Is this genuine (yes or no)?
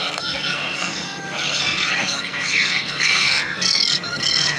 no